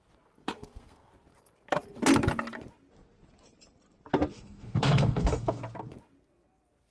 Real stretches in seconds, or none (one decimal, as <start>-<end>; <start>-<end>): 0.0-0.4; 1.1-4.3; 5.6-6.9

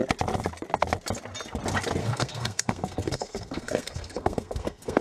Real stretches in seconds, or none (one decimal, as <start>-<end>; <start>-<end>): 0.0-2.0

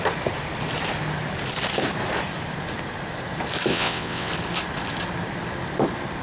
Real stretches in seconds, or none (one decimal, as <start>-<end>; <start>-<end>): 0.0-3.7; 4.3-6.2